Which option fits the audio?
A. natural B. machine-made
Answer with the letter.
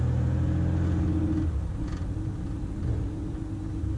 A